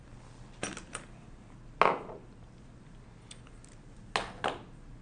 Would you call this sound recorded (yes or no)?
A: yes